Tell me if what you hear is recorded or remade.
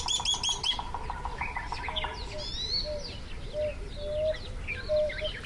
recorded